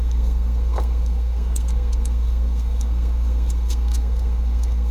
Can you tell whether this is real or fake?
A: fake